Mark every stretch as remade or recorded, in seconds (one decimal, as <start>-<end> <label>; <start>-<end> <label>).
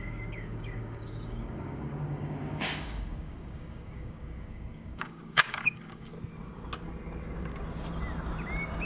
0.0-6.1 remade; 6.1-8.9 recorded